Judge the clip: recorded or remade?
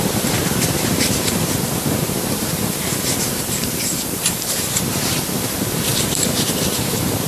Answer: remade